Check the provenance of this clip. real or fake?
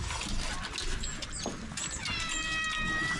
real